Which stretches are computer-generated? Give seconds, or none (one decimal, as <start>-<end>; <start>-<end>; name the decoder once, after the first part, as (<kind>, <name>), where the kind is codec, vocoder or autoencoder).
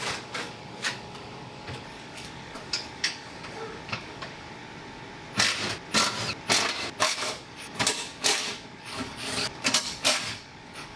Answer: 0.0-4.6 (codec, DAC); 7.0-11.0